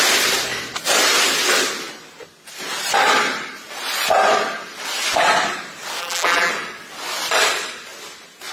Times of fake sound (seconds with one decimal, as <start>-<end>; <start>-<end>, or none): 6.0-6.5